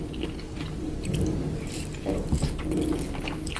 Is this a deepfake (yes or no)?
no